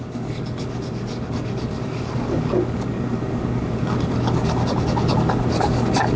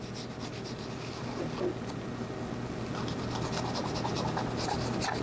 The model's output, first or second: first